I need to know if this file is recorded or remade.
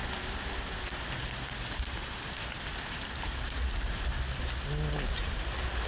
recorded